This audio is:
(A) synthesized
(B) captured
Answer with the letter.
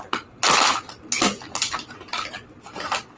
B